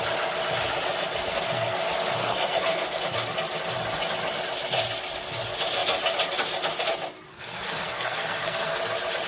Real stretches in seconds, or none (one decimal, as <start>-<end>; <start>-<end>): 0.0-1.3; 1.8-2.2; 3.0-7.3; 8.8-9.3